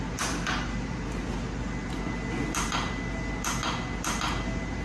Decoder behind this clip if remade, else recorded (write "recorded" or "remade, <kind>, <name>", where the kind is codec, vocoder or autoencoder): recorded